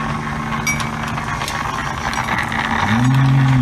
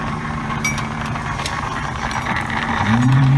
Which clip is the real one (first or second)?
first